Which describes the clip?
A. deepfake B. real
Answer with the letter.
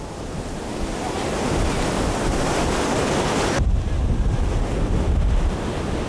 B